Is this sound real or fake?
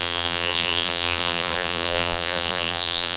fake